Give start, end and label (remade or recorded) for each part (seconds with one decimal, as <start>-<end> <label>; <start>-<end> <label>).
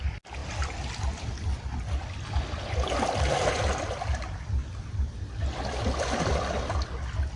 0.0-7.4 recorded